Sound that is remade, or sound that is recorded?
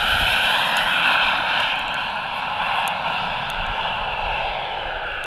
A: remade